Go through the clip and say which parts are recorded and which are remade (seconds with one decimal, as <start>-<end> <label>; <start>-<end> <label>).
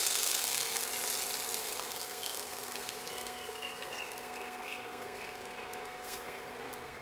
0.0-0.9 remade; 0.9-1.6 recorded; 1.6-7.0 remade